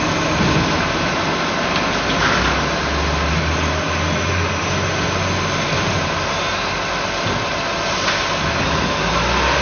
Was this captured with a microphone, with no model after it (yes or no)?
yes